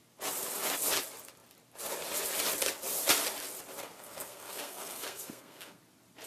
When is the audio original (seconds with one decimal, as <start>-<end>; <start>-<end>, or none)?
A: 0.0-3.8; 5.8-6.3